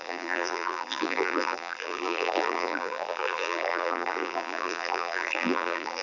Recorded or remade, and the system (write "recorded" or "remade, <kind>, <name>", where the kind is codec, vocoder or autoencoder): remade, vocoder, BigVGAN v2